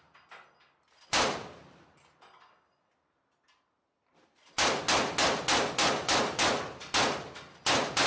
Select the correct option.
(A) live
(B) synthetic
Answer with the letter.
A